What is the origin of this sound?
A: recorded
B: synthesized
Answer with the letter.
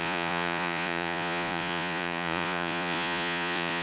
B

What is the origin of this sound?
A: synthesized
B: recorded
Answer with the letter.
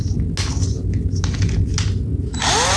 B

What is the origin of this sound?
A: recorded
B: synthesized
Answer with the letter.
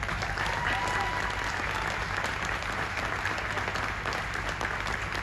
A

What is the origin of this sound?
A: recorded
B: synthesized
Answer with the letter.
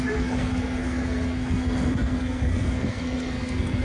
B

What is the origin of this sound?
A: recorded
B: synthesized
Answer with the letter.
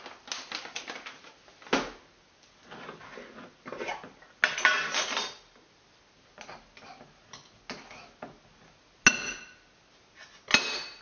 A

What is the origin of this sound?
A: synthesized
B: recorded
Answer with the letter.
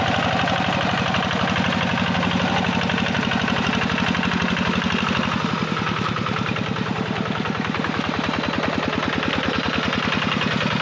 B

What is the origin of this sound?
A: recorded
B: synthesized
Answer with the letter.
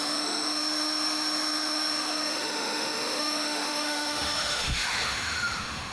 B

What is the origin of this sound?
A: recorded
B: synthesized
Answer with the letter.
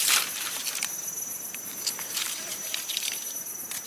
B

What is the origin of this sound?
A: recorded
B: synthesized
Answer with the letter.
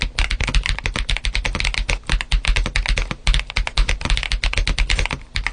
A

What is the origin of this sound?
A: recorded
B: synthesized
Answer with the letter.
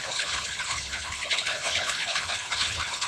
B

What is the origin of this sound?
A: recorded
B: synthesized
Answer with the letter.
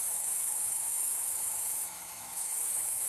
B